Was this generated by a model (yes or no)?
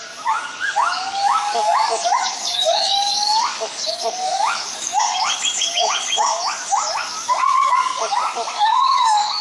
yes